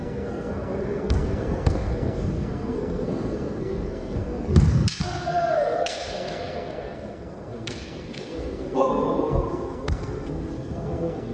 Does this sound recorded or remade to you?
remade